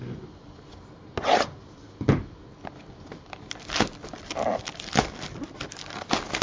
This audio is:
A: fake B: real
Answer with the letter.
B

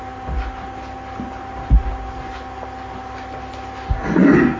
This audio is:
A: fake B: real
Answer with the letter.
B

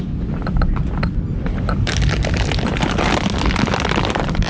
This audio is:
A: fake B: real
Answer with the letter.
B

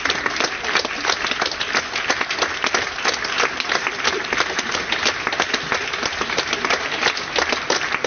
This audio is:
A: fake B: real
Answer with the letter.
B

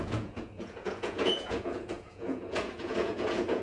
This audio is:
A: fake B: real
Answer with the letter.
A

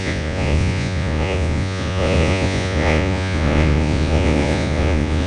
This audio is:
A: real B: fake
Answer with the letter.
B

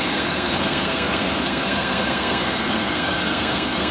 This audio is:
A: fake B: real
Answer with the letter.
A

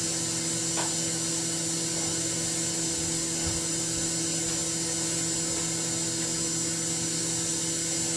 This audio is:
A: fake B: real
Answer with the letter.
B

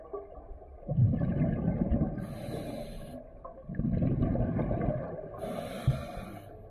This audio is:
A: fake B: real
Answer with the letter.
B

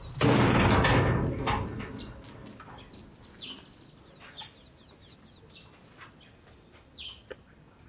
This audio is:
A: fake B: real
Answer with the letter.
B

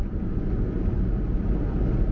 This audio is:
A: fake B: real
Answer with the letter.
B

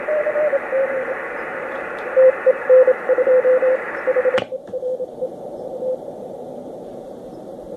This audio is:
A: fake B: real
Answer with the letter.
A